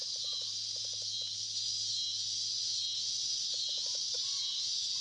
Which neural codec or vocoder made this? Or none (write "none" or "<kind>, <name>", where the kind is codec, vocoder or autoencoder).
none